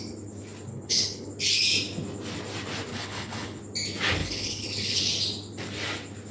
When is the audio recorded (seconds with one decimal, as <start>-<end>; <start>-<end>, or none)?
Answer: 0.0-0.7; 1.3-2.9; 3.6-4.2; 5.0-6.3